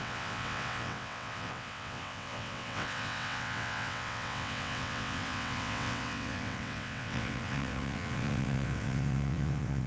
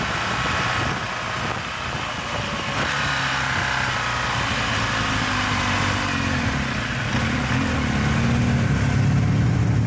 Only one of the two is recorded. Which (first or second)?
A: second